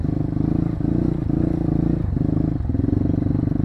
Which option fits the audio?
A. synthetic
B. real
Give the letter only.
B